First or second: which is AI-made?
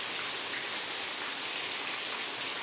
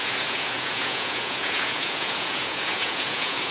second